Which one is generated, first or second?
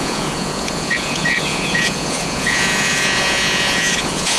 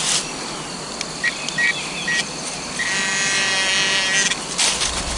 first